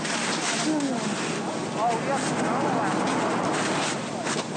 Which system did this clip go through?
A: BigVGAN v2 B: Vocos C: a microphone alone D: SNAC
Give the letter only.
C